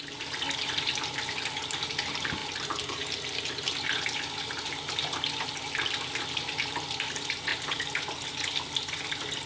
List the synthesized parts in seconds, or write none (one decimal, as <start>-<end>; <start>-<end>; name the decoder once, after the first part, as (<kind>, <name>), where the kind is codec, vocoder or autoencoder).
none